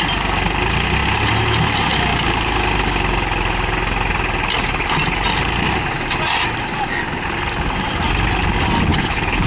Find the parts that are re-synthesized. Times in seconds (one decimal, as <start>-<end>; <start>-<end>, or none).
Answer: 8.9-9.5